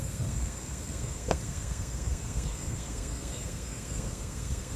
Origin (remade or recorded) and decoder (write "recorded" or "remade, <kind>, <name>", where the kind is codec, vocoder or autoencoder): remade, codec, SNAC